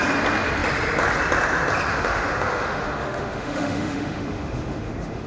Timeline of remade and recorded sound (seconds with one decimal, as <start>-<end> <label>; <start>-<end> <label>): 0.0-1.9 recorded; 1.9-5.3 remade